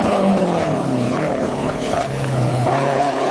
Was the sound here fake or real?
fake